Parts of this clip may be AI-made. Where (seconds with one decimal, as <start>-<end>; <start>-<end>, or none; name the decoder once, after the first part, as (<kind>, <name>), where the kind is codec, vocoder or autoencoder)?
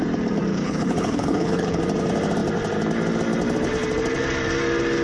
0.5-1.8 (codec, HILCodec)